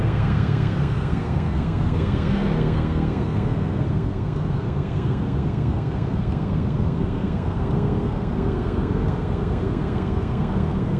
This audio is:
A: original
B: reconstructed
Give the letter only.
B